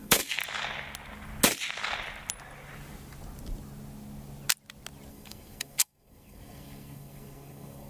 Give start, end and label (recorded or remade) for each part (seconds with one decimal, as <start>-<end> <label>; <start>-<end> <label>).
0.0-0.4 remade; 0.4-5.1 recorded; 5.1-7.9 remade